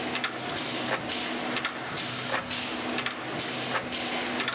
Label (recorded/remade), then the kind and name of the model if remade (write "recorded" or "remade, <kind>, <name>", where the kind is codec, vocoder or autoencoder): recorded